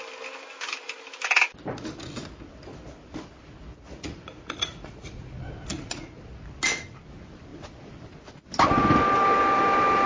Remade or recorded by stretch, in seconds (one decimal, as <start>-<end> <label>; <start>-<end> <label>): 0.0-3.9 recorded; 3.9-5.3 remade; 5.3-5.7 recorded; 5.7-6.2 remade; 6.2-10.1 recorded